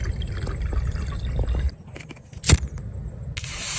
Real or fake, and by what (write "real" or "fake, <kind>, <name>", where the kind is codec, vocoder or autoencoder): real